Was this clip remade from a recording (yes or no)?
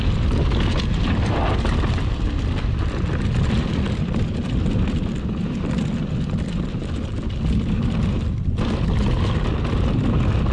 no